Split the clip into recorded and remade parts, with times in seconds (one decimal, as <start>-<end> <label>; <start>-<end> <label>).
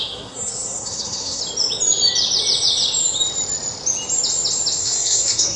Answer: 0.0-1.4 remade; 1.4-4.8 recorded; 4.8-5.6 remade